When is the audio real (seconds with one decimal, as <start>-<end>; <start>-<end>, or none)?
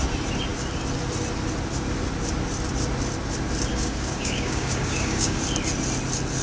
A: 0.0-3.7; 5.4-6.4